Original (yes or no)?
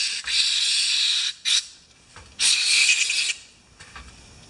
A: yes